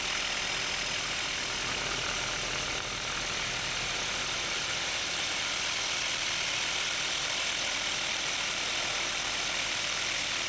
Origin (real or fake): real